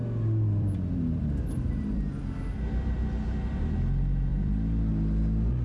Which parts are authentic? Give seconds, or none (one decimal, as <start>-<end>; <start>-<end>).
2.1-4.3; 4.9-5.6